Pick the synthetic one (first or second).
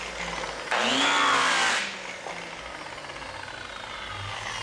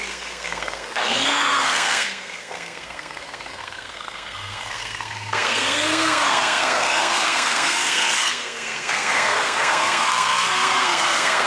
second